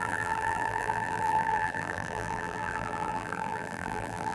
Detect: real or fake fake